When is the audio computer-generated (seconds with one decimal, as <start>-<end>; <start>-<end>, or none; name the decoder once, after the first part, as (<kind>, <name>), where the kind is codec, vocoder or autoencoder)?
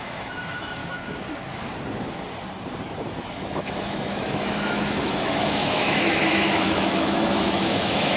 0.0-0.8 (autoencoder, DAC-VAE); 3.3-8.2